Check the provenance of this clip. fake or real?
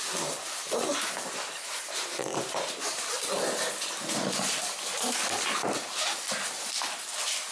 real